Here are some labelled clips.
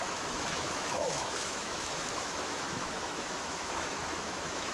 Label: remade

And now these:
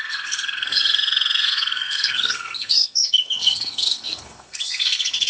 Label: remade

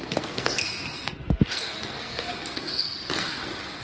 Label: remade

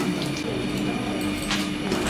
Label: recorded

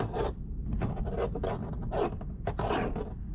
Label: remade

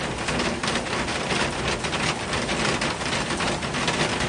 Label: recorded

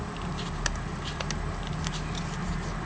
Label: recorded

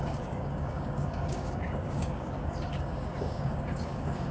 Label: remade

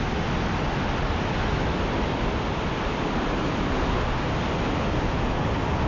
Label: recorded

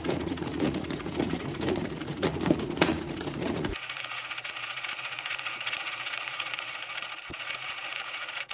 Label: remade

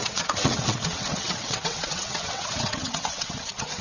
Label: remade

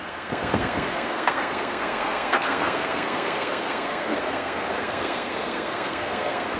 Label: remade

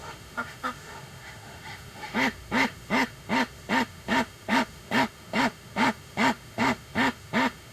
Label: remade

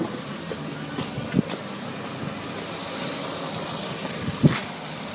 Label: recorded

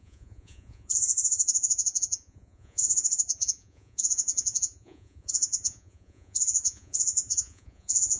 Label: remade